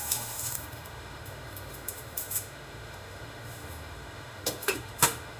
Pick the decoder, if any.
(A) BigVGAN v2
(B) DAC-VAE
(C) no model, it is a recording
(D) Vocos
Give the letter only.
B